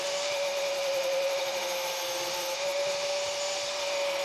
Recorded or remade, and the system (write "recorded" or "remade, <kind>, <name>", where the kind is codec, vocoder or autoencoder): recorded